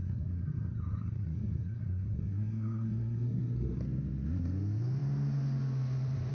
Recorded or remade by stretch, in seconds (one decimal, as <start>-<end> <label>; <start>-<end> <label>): 0.0-3.8 remade; 3.8-6.3 recorded